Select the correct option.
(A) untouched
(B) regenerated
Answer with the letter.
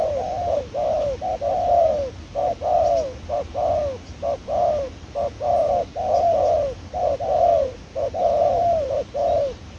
A